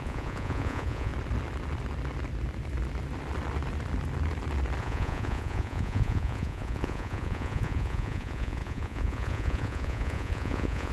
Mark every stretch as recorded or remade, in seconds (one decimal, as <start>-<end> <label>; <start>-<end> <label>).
0.0-1.1 remade; 1.1-4.8 recorded; 4.8-10.9 remade